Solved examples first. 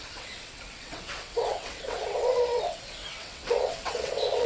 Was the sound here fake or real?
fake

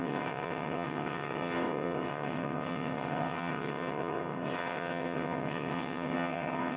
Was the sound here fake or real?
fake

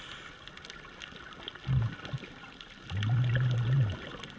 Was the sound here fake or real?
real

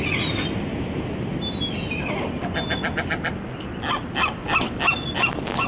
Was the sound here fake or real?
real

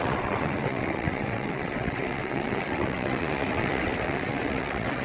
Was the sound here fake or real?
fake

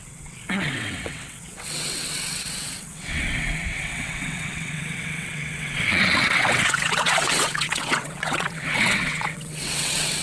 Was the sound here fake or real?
fake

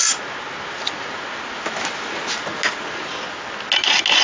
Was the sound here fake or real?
real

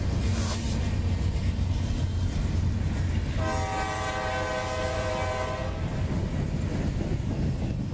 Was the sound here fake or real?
real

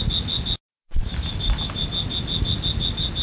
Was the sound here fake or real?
real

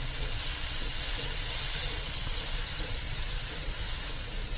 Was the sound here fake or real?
fake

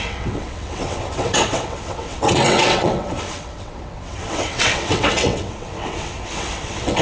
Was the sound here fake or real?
fake